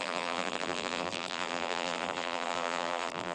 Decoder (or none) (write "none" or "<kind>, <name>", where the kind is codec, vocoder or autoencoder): vocoder, BigVGAN v2